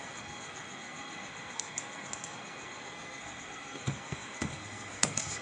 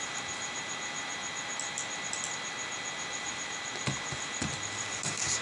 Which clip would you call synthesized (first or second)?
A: first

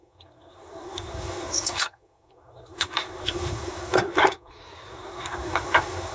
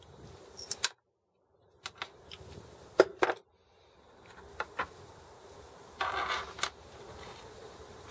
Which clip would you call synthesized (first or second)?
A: first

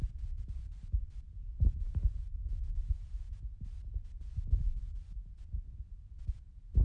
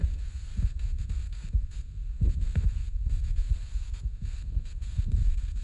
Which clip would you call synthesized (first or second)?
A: second